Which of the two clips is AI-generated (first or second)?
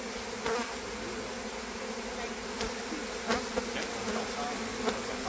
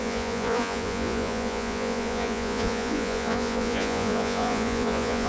second